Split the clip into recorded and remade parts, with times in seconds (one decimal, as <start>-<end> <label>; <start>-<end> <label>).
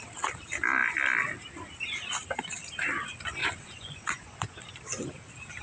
0.0-3.4 recorded; 3.4-4.6 remade; 4.6-5.6 recorded